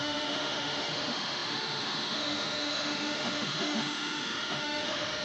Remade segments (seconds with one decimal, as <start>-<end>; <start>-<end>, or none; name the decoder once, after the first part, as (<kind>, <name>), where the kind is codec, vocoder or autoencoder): 0.0-5.2 (autoencoder, DAC-VAE)